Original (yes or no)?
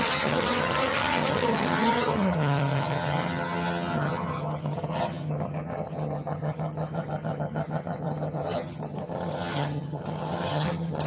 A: no